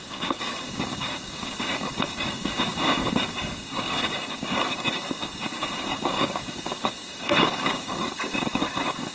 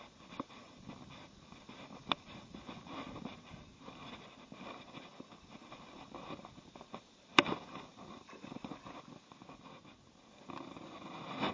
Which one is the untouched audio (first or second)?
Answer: second